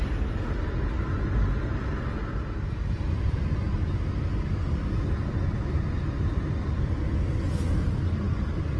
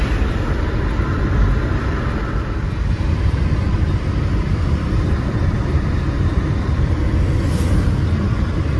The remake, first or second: second